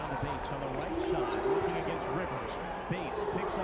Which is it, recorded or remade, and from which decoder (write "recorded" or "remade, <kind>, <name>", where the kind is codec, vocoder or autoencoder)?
recorded